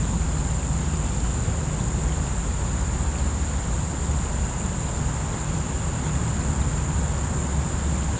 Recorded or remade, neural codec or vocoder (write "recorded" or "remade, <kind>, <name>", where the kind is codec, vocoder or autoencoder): recorded